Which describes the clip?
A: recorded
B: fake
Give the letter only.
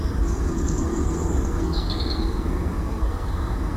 B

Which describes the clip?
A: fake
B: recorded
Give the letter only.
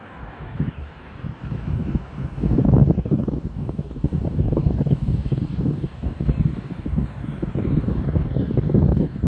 A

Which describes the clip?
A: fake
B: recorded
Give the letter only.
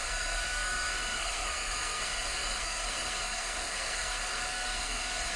A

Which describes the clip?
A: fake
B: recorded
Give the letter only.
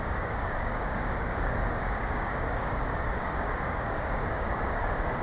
A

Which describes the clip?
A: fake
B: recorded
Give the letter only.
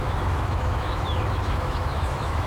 A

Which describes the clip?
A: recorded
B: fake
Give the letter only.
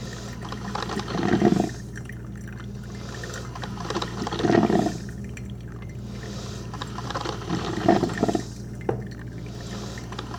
A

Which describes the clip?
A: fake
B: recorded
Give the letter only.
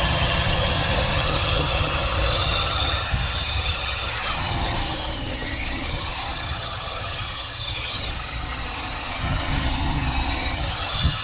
A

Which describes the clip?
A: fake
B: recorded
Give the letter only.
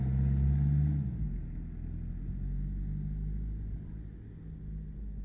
B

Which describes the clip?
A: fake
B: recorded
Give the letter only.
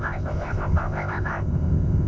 A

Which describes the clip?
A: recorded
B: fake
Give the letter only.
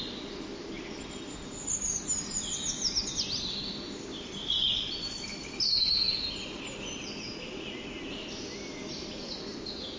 A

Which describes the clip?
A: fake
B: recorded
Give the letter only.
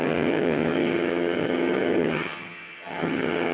A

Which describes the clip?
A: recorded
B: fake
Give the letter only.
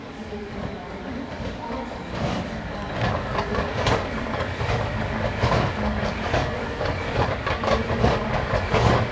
B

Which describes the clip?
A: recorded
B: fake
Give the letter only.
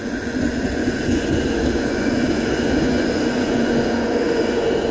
B